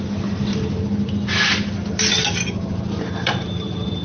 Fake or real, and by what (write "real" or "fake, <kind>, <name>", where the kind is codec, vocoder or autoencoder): real